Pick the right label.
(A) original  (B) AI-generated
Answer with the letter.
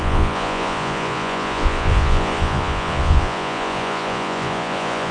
B